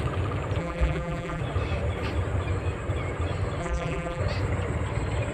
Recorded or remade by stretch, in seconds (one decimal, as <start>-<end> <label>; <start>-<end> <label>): 0.0-0.6 recorded; 0.6-1.4 remade; 1.4-3.6 recorded; 3.6-4.2 remade; 4.2-5.3 recorded